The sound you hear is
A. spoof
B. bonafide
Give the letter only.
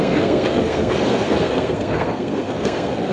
A